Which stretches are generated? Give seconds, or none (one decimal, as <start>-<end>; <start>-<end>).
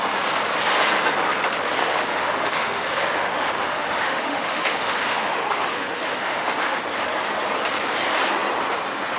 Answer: 1.8-6.8